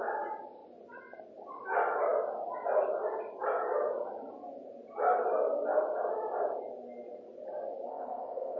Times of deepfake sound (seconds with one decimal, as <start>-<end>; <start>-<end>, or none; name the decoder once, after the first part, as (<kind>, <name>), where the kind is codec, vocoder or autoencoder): 7.9-8.6 (codec, ZipCodec)